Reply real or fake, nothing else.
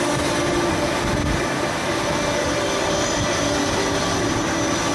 real